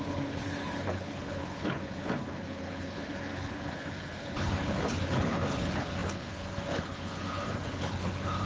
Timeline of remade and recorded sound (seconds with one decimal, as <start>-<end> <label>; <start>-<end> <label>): 0.0-8.5 remade